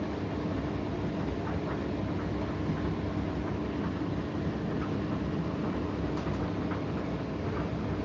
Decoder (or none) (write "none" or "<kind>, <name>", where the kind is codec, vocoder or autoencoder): none